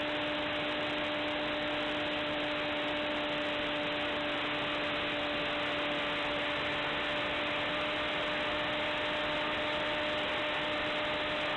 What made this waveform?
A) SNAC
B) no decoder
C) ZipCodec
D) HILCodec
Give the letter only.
B